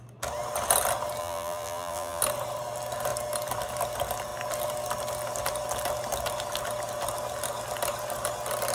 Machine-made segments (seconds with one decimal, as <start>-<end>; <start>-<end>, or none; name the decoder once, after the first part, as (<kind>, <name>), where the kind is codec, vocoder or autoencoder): 1.2-2.2 (vocoder, BigVGAN v2)